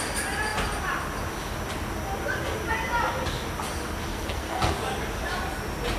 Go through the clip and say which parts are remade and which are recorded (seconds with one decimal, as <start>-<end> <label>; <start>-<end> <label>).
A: 0.0-4.1 recorded; 4.1-4.7 remade; 4.7-6.0 recorded